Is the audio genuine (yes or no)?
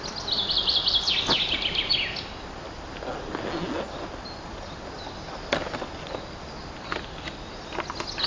yes